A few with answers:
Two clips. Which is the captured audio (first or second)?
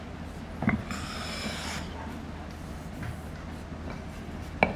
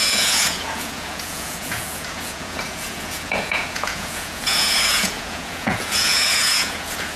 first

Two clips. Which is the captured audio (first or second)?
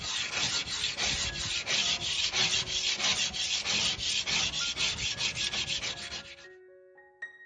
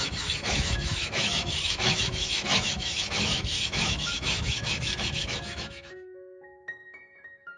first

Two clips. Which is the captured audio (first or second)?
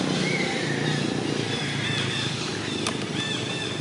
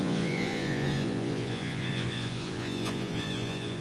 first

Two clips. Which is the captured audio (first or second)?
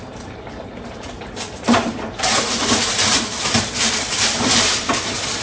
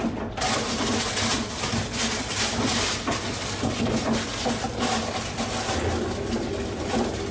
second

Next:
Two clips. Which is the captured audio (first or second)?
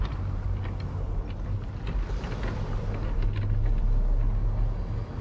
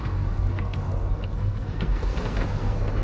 first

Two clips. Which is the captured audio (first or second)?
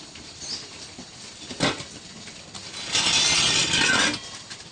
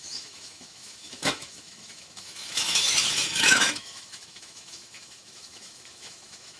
first